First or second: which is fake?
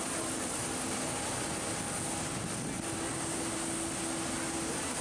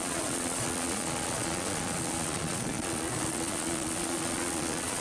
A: second